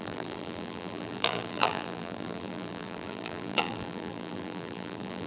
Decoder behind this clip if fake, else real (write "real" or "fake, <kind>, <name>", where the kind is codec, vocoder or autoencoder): fake, vocoder, BigVGAN v2